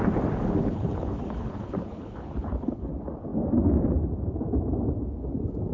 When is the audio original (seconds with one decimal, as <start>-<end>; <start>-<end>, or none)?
0.0-0.6; 2.9-5.7